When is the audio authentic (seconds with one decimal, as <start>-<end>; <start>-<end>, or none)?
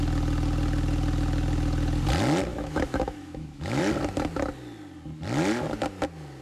0.0-2.5; 3.8-6.4